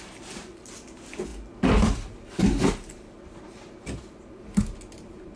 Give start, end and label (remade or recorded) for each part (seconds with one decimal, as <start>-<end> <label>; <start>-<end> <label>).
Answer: 0.0-5.4 remade